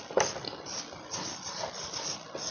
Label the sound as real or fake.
real